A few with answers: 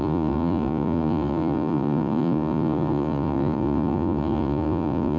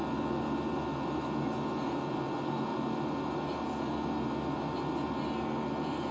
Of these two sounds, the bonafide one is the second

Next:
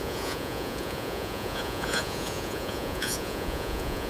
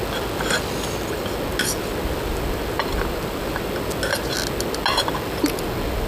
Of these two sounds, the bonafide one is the second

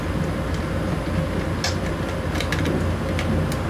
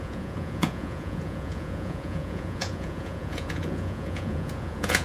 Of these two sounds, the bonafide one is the first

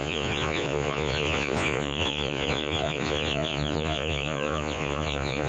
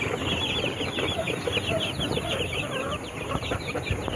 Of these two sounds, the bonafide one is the second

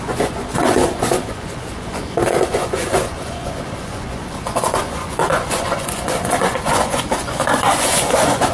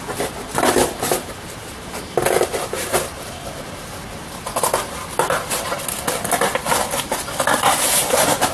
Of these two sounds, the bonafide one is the second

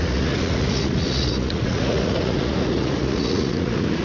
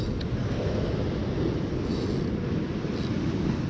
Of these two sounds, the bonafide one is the second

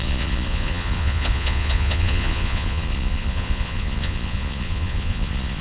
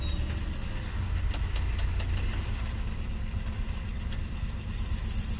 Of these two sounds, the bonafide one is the second